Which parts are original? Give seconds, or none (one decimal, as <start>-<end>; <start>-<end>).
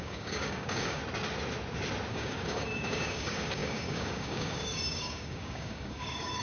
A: 1.0-2.1